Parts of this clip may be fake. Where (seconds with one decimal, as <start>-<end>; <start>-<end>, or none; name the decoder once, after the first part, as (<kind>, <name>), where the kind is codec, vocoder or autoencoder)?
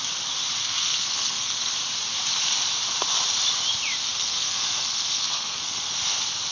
0.6-1.7 (codec, SNAC); 4.0-5.9